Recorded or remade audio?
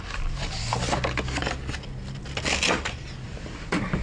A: recorded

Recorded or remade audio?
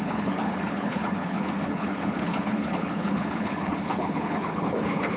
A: remade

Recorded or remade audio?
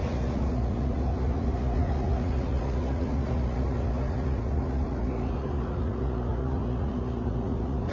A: remade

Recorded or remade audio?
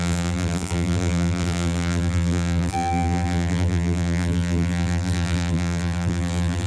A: remade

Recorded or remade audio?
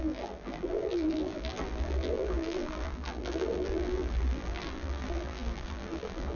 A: remade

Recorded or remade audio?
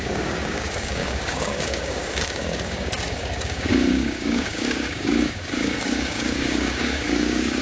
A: remade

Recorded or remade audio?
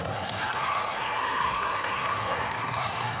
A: remade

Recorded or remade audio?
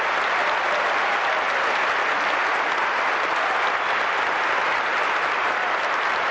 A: recorded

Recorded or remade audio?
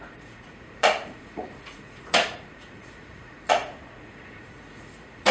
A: remade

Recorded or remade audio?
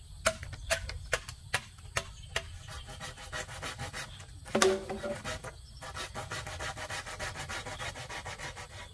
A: recorded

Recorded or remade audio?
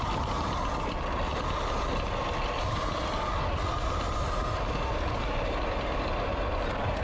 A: recorded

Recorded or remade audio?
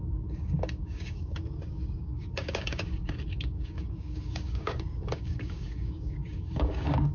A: remade